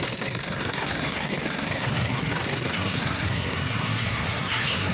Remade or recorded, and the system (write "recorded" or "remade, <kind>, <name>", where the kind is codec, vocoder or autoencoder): remade, codec, SNAC